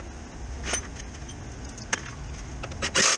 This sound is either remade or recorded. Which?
recorded